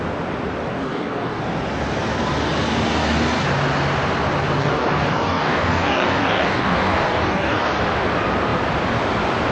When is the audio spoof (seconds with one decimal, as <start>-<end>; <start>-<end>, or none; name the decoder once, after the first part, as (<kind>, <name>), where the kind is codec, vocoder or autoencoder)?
0.7-1.4 (codec, DAC); 4.6-7.8